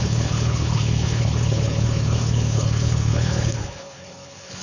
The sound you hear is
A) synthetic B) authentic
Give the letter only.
A